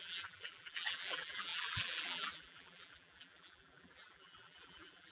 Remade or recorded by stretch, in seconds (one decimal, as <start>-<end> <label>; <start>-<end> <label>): 0.0-5.1 remade